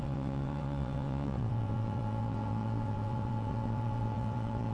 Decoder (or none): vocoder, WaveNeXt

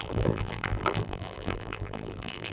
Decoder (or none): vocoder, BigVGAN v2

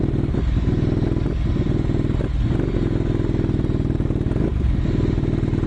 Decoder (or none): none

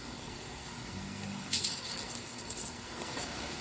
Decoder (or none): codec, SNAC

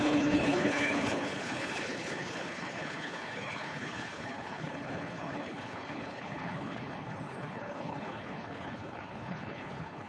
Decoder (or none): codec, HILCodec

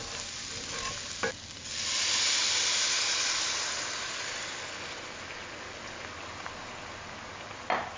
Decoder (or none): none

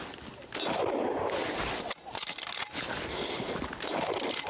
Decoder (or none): none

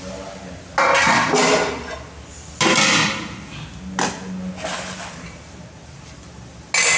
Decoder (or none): none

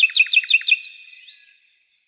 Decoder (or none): none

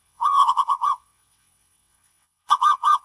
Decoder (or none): vocoder, WaveNeXt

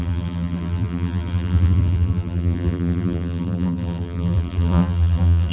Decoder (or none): vocoder, BigVGAN v2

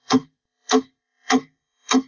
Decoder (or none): codec, SNAC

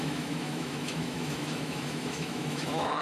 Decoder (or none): autoencoder, DAC-VAE